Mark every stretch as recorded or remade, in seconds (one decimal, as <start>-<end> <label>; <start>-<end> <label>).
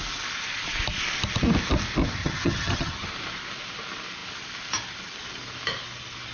0.0-2.2 recorded; 2.2-3.1 remade; 3.1-6.3 recorded